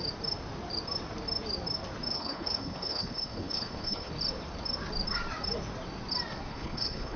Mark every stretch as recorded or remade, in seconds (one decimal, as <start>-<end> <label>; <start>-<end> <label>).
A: 0.0-2.1 recorded; 2.1-4.1 remade; 4.1-6.5 recorded; 6.5-7.2 remade